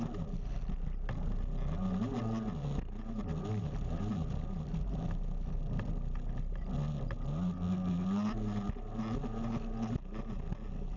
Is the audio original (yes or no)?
yes